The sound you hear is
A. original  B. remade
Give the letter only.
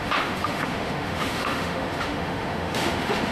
B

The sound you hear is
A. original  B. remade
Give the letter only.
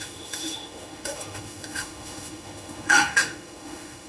B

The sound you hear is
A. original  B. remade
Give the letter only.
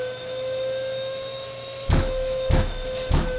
B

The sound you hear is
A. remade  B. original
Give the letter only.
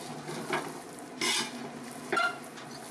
B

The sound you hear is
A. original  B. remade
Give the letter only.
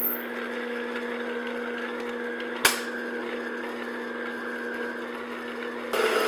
A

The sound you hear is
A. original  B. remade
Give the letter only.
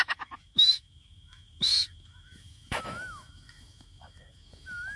B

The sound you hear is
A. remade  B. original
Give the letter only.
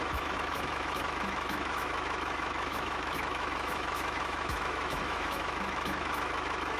A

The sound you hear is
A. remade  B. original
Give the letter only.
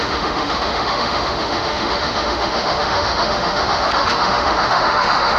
A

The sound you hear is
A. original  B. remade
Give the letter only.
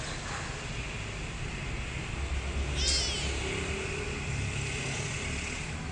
A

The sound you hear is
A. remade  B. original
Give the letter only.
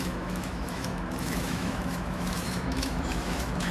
A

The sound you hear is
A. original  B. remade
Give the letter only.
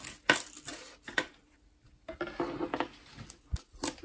A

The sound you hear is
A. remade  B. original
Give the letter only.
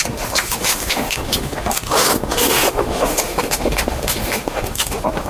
A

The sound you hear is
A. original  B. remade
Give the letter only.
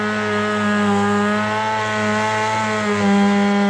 A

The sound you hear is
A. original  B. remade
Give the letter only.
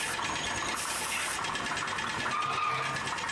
A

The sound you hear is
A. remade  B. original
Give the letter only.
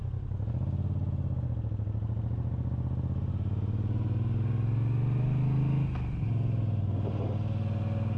B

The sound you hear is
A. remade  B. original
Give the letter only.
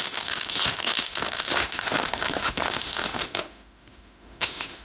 A